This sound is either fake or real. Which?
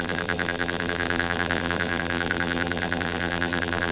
fake